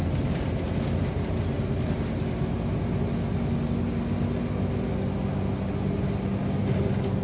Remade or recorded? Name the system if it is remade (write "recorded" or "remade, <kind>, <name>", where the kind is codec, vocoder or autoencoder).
recorded